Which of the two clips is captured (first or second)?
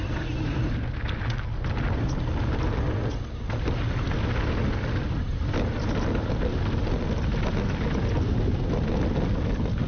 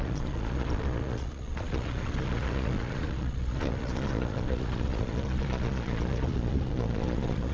first